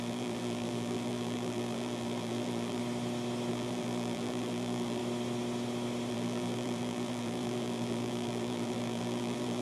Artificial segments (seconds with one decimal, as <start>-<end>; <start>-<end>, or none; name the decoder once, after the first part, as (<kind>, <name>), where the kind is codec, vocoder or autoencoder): 0.0-2.8 (vocoder, BigVGAN v2); 3.5-5.0; 6.1-9.6